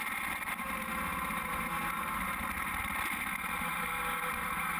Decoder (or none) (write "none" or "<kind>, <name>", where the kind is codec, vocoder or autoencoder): none